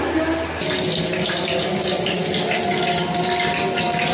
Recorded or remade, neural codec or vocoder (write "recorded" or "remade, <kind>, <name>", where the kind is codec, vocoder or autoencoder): recorded